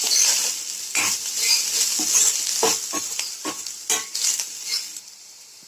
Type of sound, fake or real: real